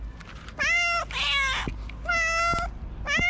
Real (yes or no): yes